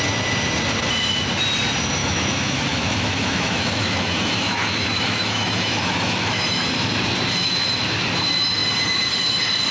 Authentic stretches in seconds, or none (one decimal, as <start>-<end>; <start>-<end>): 0.0-2.0; 6.7-9.7